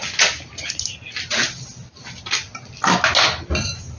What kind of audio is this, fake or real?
real